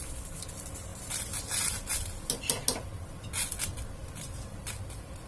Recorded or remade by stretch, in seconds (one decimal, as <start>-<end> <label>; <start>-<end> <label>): 0.0-5.3 recorded